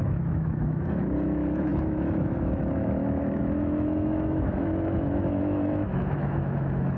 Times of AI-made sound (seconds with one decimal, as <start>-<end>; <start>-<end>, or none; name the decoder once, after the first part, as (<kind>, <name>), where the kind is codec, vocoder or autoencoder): 0.0-7.0 (autoencoder, DAC-VAE)